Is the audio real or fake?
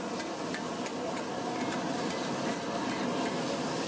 real